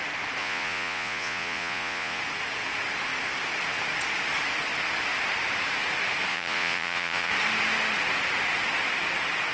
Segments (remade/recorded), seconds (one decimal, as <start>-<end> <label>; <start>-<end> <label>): 0.0-0.4 recorded; 0.4-2.2 remade; 2.2-6.3 recorded; 6.3-7.3 remade; 7.3-9.5 recorded